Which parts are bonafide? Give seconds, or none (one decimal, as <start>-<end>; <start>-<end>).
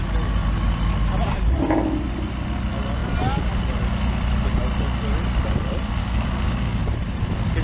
0.0-6.0; 6.8-7.6